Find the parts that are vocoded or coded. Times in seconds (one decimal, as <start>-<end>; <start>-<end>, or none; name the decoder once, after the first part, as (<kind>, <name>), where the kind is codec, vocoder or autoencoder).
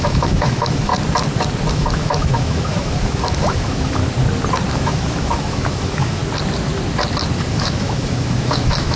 0.0-0.9 (autoencoder, DAC-VAE); 1.7-4.0; 4.7-6.2; 7.5-9.0